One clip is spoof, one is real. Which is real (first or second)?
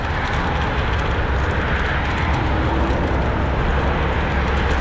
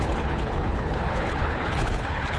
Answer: first